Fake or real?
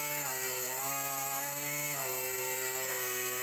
fake